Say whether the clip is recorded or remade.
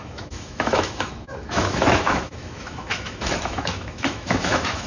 remade